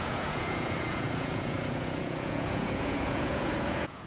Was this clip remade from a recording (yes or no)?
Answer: yes